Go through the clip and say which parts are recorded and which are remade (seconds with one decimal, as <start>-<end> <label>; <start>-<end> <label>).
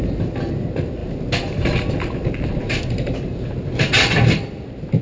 0.0-5.0 recorded